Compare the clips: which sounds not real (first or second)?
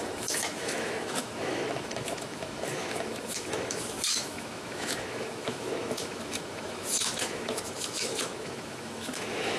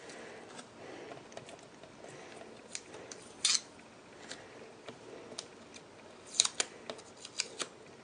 first